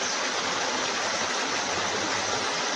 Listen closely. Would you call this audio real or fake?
real